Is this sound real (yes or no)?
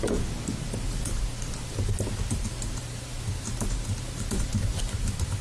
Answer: no